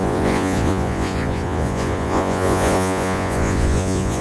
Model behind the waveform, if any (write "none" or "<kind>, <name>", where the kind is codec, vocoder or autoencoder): vocoder, Vocos